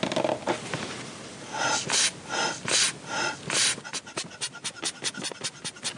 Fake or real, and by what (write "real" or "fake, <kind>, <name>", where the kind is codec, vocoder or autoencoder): real